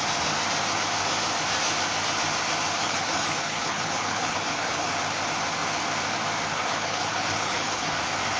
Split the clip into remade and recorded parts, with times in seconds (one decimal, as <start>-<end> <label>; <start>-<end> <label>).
0.0-2.8 recorded; 2.8-4.9 remade; 4.9-6.5 recorded; 6.5-8.0 remade; 8.0-8.4 recorded